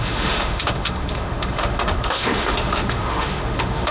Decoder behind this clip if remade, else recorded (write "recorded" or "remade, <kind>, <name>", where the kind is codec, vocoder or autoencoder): remade, autoencoder, DAC-VAE